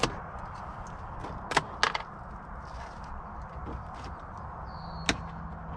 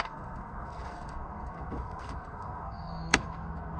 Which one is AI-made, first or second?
second